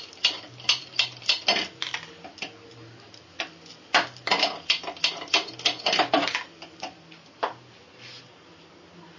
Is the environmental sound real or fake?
real